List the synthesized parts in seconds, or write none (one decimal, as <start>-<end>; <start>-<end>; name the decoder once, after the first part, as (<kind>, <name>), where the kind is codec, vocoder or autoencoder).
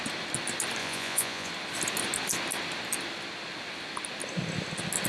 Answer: 0.8-1.5 (vocoder, Vocos)